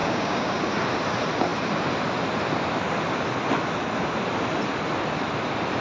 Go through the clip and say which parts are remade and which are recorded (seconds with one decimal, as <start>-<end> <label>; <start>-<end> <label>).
0.0-0.7 remade; 0.7-5.8 recorded